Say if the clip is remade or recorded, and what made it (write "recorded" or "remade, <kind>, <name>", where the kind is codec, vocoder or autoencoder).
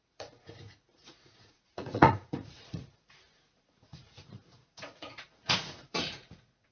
remade, vocoder, Vocos